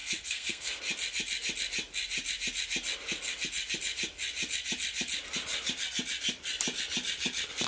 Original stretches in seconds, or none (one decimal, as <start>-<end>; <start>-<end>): 0.8-7.7

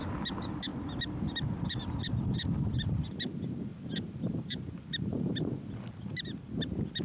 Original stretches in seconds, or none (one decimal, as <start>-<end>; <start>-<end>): 0.0-7.0

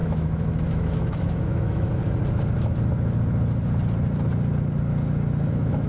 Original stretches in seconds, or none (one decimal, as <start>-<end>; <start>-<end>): 2.0-5.5